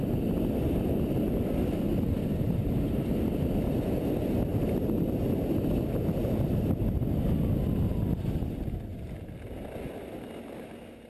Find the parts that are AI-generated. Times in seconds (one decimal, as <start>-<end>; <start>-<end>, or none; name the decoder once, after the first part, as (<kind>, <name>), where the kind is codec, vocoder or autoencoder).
none